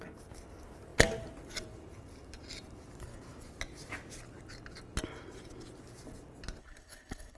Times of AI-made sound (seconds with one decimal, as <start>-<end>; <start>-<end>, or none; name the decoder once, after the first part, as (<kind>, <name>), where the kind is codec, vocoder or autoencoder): 6.6-7.4 (codec, HILCodec)